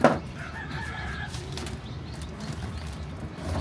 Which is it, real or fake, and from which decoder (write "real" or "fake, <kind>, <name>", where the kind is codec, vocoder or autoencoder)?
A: fake, vocoder, BigVGAN v2